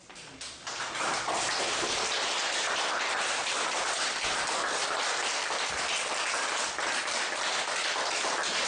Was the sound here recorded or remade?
remade